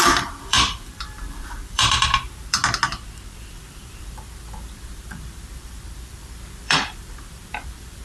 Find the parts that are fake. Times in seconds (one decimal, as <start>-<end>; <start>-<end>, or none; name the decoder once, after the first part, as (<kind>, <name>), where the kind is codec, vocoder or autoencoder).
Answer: 0.0-2.6 (vocoder, BigVGAN v2); 3.3-8.0

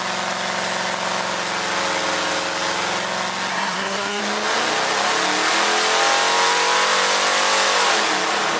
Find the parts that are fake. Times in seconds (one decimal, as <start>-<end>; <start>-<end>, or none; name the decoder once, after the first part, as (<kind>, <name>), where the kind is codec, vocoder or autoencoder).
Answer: 3.5-4.2 (codec, SNAC)

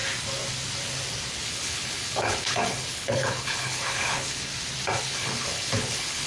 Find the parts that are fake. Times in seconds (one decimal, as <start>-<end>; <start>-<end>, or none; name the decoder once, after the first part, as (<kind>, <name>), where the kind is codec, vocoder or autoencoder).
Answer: 1.3-4.5 (codec, HILCodec); 5.0-6.3

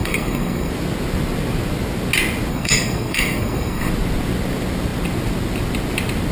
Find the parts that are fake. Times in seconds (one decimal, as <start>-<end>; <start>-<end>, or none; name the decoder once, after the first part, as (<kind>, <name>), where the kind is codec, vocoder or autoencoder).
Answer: 0.0-0.7 (codec, SNAC); 2.5-3.9

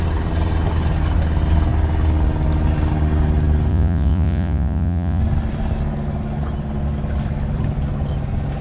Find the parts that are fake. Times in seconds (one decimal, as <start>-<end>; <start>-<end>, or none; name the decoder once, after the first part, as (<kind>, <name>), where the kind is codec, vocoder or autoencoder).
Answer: 3.7-5.2 (vocoder, Vocos)

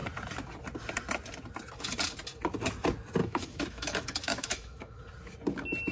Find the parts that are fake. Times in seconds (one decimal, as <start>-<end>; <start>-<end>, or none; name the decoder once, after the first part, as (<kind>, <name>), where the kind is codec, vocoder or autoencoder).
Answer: 3.2-5.0 (autoencoder, DAC-VAE)

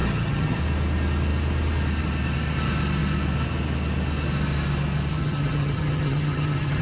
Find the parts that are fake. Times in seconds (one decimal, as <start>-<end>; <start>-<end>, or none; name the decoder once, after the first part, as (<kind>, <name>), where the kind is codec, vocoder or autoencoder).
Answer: 0.0-0.6 (vocoder, HiFi-GAN); 5.1-6.8

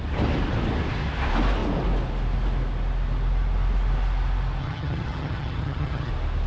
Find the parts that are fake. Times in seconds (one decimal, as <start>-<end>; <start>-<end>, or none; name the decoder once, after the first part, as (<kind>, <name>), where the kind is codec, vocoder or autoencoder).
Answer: 4.6-6.1 (vocoder, HiFi-GAN)